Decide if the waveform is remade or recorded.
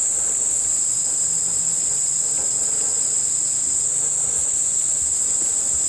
recorded